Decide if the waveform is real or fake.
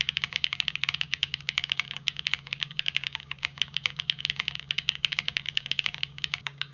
fake